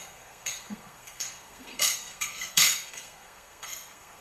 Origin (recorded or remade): remade